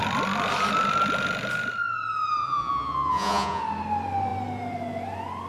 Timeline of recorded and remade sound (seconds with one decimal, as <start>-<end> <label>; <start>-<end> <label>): 0.0-2.4 recorded; 2.4-3.6 remade; 3.6-5.5 recorded